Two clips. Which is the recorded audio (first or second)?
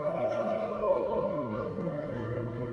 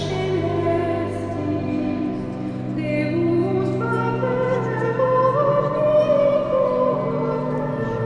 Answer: second